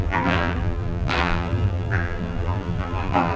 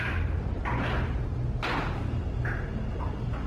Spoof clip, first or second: first